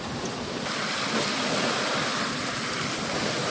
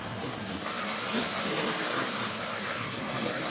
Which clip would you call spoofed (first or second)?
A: second